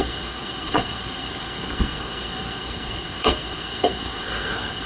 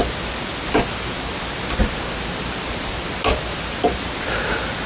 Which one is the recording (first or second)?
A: second